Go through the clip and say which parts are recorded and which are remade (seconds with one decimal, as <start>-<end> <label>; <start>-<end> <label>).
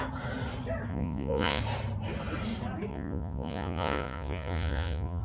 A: 0.0-0.9 recorded; 0.9-1.6 remade; 1.6-2.9 recorded; 2.9-5.2 remade